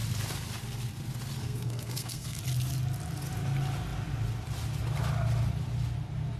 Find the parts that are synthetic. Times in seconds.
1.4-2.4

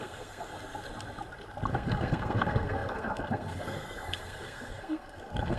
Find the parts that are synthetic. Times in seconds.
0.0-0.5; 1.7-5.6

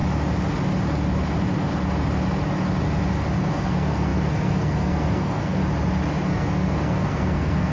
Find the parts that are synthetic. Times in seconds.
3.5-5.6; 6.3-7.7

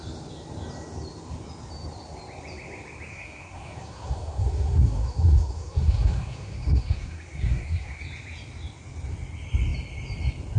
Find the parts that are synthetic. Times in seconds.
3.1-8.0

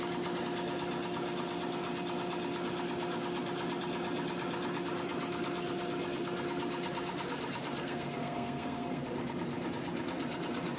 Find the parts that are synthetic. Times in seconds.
7.8-9.0